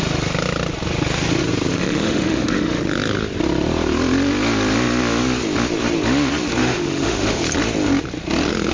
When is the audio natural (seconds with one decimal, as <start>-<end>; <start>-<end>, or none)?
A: 0.0-1.7; 2.8-6.6; 7.4-8.7